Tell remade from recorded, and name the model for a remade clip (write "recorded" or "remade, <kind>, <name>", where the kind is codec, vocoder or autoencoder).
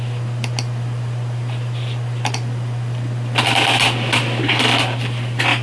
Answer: recorded